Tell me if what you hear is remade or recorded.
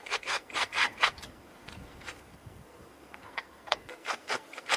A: remade